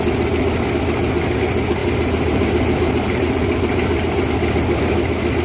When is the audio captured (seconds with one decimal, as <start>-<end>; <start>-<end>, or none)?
0.0-1.8; 4.3-5.4